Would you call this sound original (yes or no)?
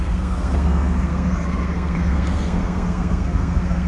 no